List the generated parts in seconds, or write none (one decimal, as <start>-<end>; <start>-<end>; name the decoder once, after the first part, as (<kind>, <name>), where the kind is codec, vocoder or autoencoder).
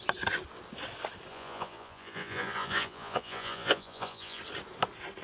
1.3-4.4 (vocoder, Vocos)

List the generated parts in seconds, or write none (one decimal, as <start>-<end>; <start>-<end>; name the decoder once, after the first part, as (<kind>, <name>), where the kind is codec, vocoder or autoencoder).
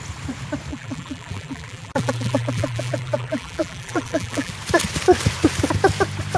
0.7-4.5 (vocoder, BigVGAN v2)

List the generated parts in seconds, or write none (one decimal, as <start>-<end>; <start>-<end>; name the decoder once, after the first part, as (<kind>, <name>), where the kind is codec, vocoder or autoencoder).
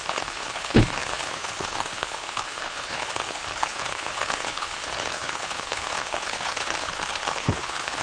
0.0-8.0 (codec, HILCodec)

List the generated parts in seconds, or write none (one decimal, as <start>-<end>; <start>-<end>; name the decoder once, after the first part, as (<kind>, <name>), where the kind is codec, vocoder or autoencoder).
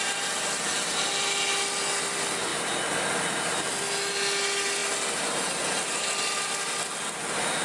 none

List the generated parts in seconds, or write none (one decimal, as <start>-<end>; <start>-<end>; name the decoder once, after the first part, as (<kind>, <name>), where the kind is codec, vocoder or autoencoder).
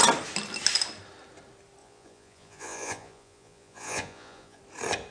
1.8-4.6 (vocoder, Vocos)